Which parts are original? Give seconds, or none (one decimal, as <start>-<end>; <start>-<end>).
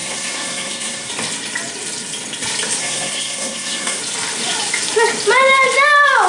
1.1-2.8; 4.0-6.3